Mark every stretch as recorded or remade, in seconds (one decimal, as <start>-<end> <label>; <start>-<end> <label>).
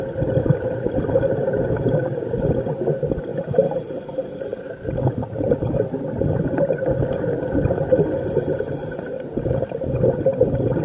0.0-3.3 recorded; 3.3-4.0 remade; 4.0-4.5 recorded; 4.5-5.6 remade; 5.6-10.8 recorded